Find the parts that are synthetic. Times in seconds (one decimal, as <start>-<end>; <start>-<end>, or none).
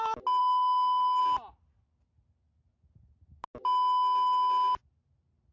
0.4-1.2